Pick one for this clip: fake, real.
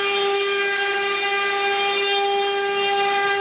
real